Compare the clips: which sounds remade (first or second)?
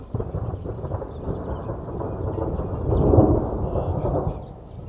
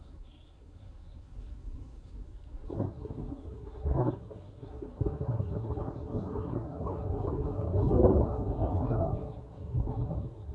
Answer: second